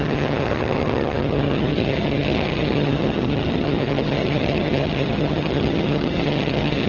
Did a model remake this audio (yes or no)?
yes